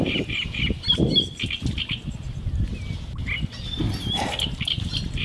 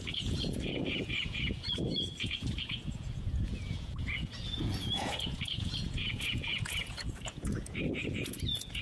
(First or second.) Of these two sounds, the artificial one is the second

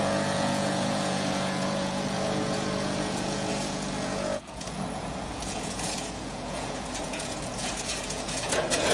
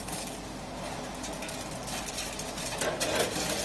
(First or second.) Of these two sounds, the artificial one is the first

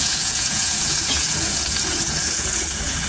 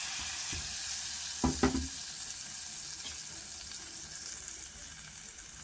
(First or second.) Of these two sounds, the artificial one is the first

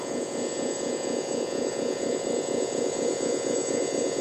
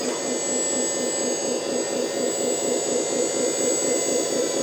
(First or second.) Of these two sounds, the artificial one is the first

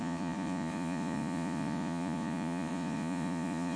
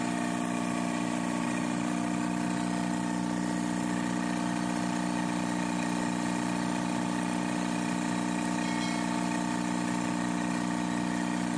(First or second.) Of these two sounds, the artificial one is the first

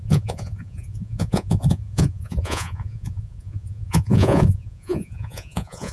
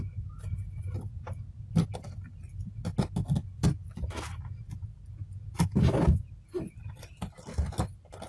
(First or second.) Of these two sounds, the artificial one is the first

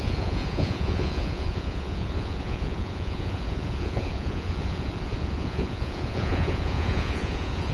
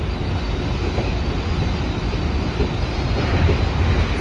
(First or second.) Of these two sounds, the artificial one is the first